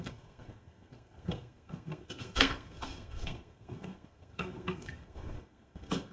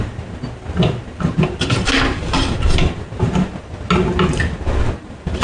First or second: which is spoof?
first